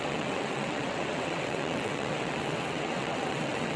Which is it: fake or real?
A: fake